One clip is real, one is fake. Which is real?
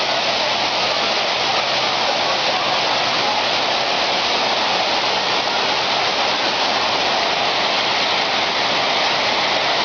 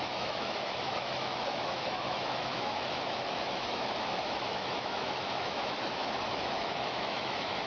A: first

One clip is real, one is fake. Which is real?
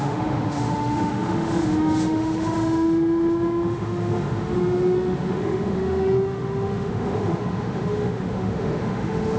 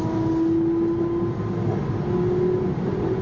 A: second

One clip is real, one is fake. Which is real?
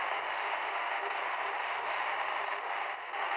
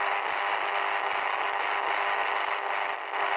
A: second